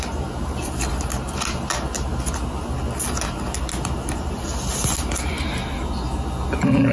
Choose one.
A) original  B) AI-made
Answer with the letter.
A